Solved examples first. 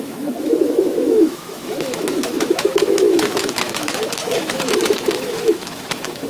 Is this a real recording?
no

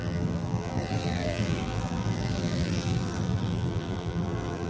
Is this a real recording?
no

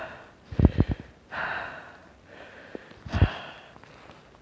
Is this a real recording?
yes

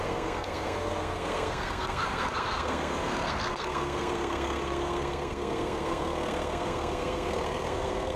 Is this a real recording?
no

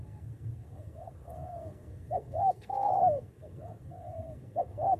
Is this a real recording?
no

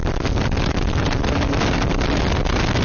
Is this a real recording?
yes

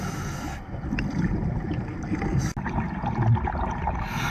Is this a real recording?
yes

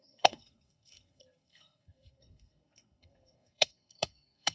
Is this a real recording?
no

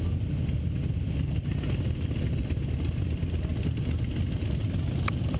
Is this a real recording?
yes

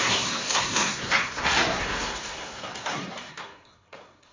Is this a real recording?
no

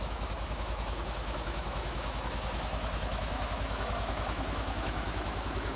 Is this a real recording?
no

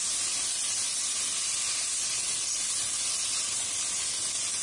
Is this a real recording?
yes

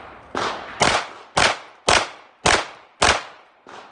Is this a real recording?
yes